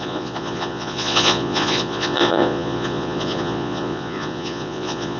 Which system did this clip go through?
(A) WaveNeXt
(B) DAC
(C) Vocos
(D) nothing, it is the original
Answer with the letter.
C